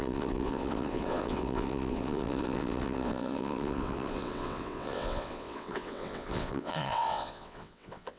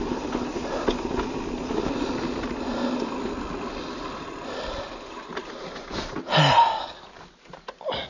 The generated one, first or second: first